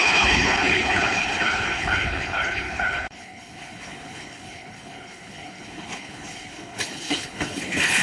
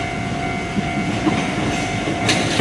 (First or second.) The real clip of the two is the second